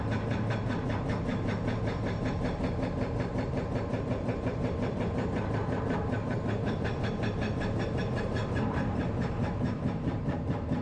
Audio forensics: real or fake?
fake